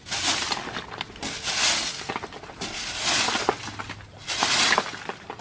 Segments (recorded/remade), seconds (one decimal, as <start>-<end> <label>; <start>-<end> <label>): 0.0-1.6 remade; 1.6-3.8 recorded; 3.8-5.4 remade